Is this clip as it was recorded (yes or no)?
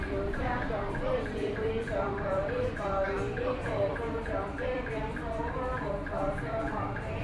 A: no